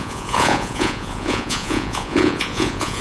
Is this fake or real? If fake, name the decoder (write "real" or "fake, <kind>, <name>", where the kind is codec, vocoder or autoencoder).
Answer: fake, vocoder, Vocos